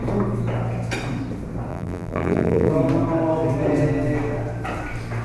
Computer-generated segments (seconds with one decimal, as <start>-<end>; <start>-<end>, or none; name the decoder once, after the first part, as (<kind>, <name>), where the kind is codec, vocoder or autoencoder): 1.7-2.7 (vocoder, BigVGAN v2)